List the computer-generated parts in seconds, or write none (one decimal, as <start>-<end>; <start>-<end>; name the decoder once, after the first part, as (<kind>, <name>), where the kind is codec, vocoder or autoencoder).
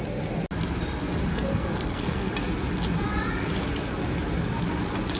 1.3-2.3 (codec, SNAC)